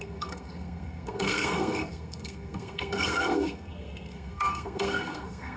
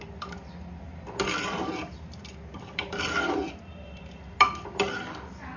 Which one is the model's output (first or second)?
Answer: first